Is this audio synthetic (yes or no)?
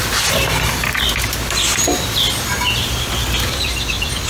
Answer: no